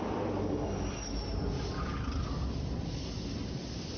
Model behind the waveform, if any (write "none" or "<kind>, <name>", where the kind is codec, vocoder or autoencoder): none